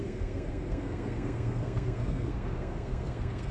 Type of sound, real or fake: fake